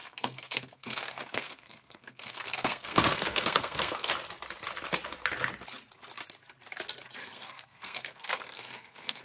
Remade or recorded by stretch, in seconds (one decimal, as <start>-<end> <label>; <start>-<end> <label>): 0.0-4.1 remade; 4.1-7.2 recorded; 7.2-9.2 remade